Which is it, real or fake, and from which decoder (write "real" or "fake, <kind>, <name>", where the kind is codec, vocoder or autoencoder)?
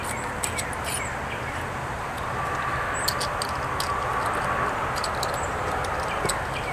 real